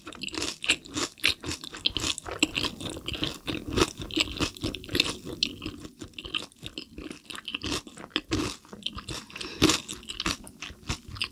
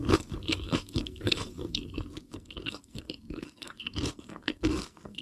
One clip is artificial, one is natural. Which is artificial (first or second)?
second